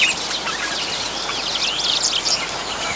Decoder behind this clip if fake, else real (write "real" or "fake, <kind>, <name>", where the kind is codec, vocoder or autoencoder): real